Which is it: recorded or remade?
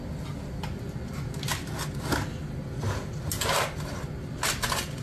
recorded